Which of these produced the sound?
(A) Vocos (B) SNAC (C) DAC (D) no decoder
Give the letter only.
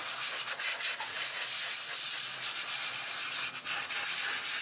D